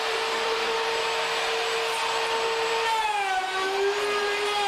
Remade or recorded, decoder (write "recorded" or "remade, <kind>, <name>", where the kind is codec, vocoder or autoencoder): recorded